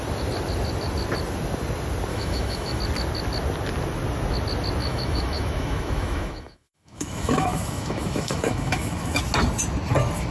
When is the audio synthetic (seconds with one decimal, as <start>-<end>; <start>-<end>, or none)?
2.1-2.8; 4.8-9.2